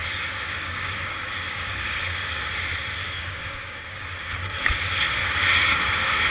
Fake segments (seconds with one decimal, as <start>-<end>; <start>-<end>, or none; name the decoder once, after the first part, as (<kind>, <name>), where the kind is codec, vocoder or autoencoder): 0.0-2.4 (codec, DAC); 3.0-4.7; 5.2-6.3